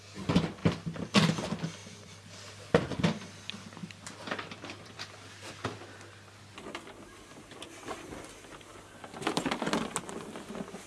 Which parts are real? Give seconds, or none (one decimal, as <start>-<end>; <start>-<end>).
0.0-0.6; 1.1-1.8; 3.4-3.8; 5.5-8.7; 9.5-10.9